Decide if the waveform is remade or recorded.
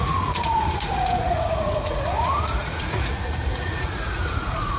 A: remade